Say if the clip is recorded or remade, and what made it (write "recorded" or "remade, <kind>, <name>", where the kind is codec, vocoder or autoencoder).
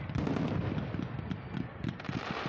recorded